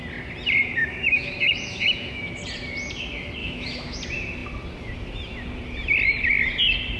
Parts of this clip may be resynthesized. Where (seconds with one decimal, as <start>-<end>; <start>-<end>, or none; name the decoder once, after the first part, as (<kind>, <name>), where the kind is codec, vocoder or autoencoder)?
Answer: 0.8-2.4 (autoencoder, DAC-VAE); 3.4-4.0